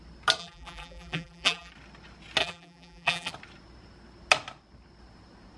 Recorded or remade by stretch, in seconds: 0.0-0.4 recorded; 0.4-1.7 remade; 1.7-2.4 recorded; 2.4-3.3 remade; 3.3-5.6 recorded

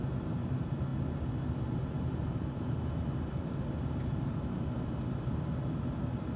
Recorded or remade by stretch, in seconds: 0.0-6.4 recorded

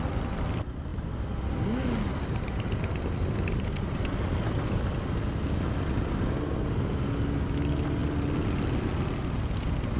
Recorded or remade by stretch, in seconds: 0.0-10.0 recorded

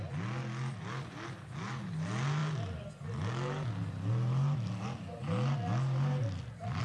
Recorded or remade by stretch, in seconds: 0.0-6.8 recorded